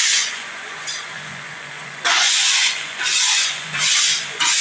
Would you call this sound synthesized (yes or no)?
yes